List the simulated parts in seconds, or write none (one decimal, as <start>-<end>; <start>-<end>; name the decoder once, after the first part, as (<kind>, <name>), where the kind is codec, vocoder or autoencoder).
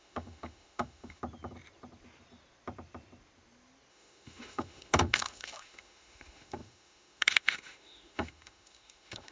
0.0-1.2 (autoencoder, DAC-VAE); 3.9-9.3